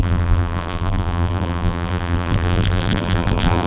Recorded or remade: remade